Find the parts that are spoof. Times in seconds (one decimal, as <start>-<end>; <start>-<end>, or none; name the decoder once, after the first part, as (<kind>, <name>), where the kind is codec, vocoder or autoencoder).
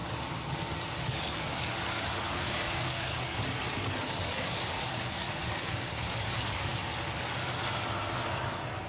1.0-6.7 (codec, DAC)